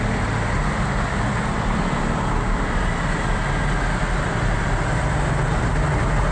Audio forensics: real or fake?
real